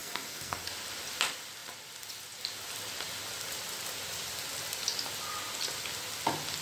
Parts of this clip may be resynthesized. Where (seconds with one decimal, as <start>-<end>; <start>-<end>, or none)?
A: 0.0-0.7